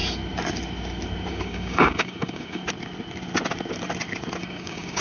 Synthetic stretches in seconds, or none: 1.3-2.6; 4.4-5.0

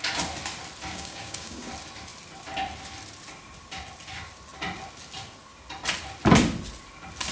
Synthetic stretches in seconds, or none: 0.9-1.7

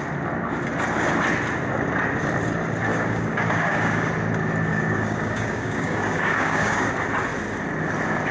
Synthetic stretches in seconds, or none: 2.9-4.1; 4.7-6.9